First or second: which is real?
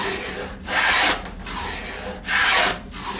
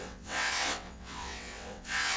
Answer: first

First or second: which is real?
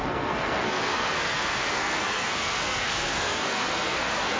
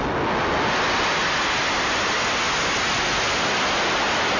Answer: second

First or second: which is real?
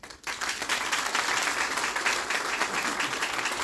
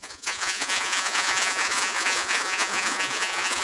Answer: first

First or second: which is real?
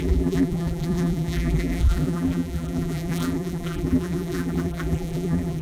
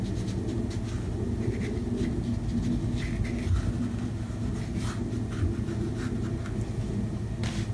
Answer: second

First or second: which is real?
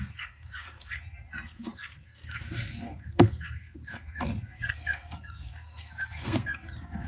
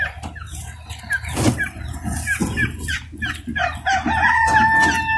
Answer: second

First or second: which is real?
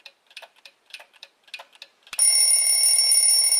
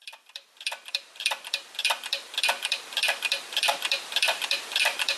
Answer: first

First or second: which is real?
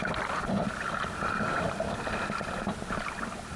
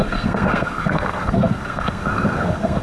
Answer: first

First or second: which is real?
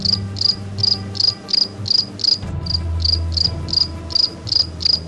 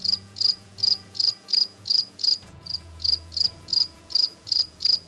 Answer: first